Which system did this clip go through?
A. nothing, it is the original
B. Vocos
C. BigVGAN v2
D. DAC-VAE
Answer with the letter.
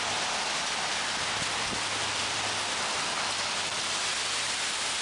A